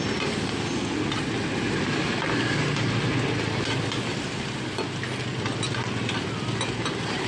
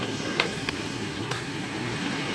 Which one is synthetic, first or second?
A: second